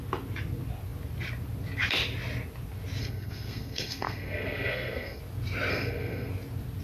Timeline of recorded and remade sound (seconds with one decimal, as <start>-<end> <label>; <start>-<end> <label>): 0.0-3.0 recorded; 3.0-5.2 remade; 5.2-5.7 recorded; 5.7-6.3 remade; 6.3-6.8 recorded